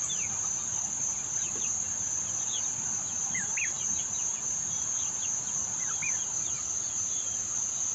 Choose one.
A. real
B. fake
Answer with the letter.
A